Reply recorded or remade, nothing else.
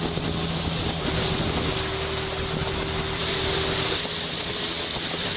recorded